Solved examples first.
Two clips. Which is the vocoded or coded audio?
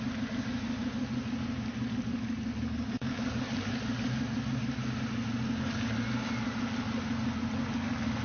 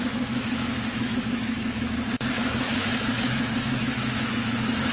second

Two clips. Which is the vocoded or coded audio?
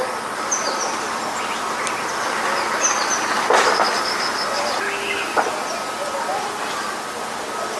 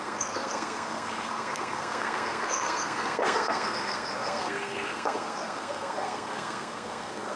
second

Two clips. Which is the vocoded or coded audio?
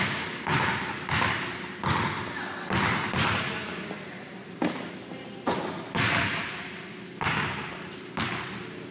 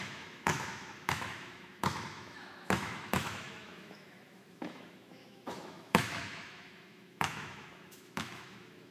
second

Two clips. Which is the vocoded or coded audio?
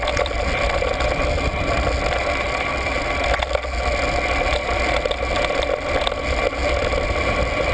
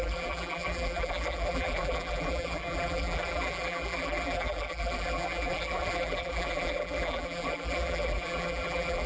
second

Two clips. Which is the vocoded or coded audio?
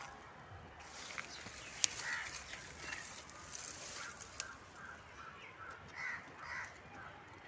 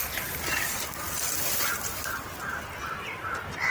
second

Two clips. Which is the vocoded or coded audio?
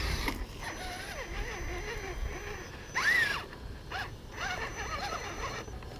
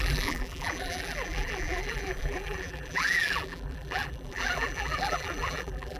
second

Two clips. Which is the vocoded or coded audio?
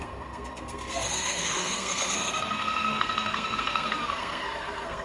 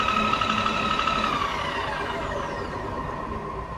first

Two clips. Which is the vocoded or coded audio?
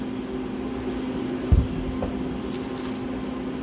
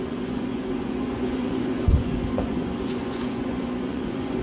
second